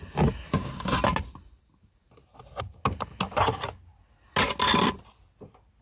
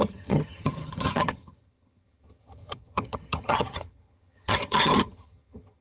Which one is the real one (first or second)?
first